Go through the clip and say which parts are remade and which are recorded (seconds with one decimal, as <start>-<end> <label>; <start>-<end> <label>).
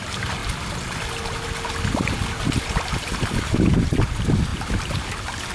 0.0-5.5 recorded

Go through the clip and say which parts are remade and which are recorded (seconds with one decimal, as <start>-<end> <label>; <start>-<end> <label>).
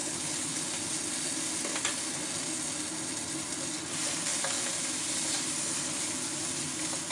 0.0-0.6 remade; 0.6-7.1 recorded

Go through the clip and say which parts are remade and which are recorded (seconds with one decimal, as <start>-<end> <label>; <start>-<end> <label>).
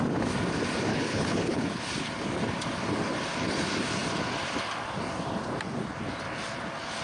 0.0-0.9 recorded; 0.9-1.8 remade; 1.8-7.0 recorded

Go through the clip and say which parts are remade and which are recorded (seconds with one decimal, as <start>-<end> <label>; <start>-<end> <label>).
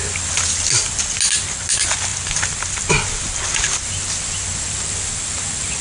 0.0-5.8 recorded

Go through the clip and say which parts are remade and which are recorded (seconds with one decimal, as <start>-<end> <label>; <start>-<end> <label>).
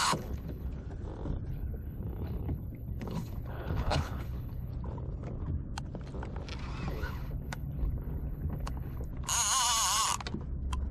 0.0-0.7 remade; 0.7-1.5 recorded; 1.5-4.7 remade; 4.7-6.9 recorded; 6.9-9.1 remade; 9.1-10.9 recorded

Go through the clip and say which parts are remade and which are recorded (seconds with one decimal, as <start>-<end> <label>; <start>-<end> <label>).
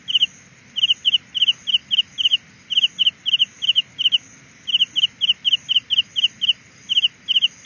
0.0-7.7 recorded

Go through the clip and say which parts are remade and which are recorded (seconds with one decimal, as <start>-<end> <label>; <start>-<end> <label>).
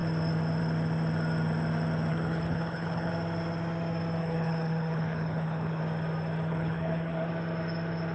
0.0-2.1 recorded; 2.1-3.1 remade; 3.1-4.2 recorded; 4.2-5.8 remade; 5.8-6.5 recorded; 6.5-7.3 remade; 7.3-8.1 recorded